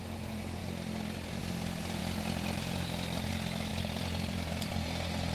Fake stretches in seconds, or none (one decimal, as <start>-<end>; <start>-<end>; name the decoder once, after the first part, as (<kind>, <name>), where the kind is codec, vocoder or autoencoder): 2.0-3.3 (vocoder, BigVGAN v2); 3.7-4.7